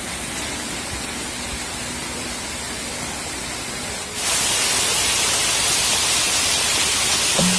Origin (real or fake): real